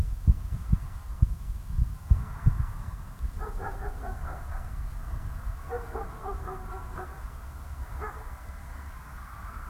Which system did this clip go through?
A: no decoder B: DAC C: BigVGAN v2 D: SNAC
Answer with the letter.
D